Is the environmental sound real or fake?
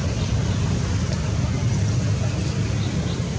real